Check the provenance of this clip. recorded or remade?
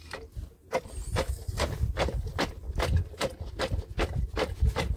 remade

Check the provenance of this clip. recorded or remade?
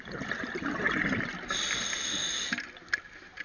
recorded